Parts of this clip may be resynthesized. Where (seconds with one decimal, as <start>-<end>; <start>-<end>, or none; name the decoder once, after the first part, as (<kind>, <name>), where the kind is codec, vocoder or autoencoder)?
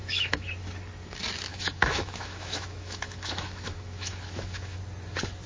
0.0-0.5 (autoencoder, DAC-VAE); 1.5-4.8